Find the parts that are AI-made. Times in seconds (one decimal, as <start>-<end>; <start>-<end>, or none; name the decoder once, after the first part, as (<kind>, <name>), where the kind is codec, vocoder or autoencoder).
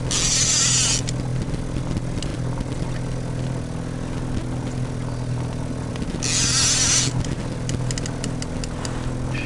none